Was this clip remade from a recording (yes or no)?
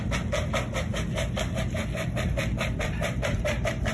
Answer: no